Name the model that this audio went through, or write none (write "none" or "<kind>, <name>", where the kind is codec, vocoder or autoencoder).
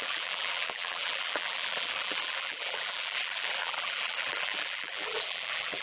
vocoder, BigVGAN v2